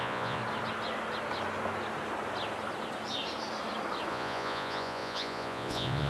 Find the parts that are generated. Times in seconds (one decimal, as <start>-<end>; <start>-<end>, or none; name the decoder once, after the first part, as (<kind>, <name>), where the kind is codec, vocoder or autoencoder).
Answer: 0.0-0.4 (vocoder, Vocos); 4.1-6.1